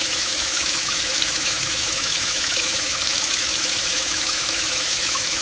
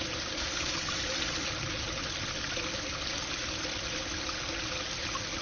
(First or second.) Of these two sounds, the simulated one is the first